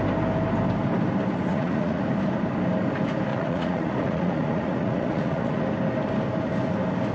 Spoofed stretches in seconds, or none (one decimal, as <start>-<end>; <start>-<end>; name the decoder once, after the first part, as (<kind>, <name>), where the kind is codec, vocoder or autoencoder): 1.5-2.0 (vocoder, Vocos); 3.3-5.6